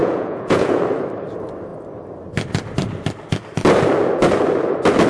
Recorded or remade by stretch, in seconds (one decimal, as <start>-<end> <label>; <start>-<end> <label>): 0.0-0.8 remade; 0.8-5.1 recorded